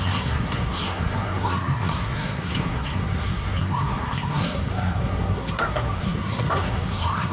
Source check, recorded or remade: remade